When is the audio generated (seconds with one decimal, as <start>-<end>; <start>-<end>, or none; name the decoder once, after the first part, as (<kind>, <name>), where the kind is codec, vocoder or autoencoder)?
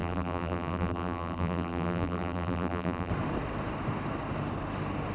0.0-3.1 (vocoder, BigVGAN v2)